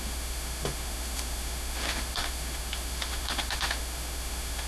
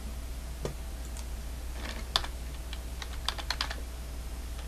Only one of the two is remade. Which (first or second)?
first